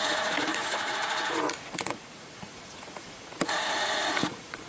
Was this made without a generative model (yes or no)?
no